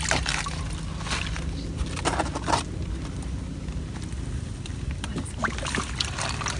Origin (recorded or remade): recorded